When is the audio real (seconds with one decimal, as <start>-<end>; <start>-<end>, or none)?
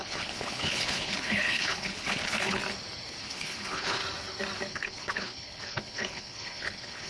2.6-3.2; 4.0-4.7